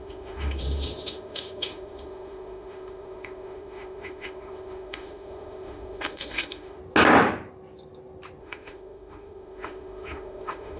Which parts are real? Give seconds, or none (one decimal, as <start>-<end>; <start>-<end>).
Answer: 6.8-8.4